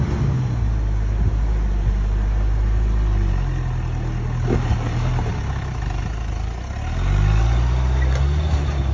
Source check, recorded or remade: recorded